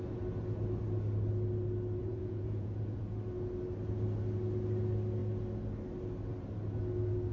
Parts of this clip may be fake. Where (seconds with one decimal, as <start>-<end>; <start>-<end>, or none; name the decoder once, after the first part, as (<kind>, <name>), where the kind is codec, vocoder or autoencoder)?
2.0-3.2 (vocoder, Vocos)